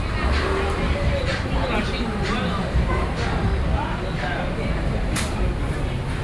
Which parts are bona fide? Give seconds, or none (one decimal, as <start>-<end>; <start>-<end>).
0.0-1.3; 3.1-6.2